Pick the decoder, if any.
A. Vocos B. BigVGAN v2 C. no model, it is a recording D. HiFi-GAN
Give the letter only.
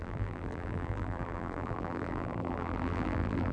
B